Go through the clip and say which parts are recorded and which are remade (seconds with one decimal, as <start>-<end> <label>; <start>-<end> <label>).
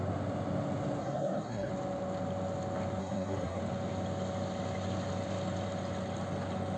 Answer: 0.0-1.0 recorded; 1.0-1.7 remade; 1.7-3.0 recorded; 3.0-3.6 remade; 3.6-6.8 recorded